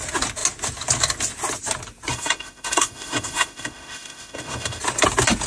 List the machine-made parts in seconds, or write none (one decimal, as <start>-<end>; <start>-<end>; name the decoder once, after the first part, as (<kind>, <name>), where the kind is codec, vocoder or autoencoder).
2.1-4.8 (autoencoder, DAC-VAE)